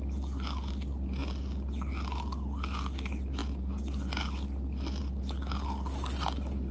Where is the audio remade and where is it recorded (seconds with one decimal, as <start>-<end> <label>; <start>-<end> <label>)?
0.0-6.7 recorded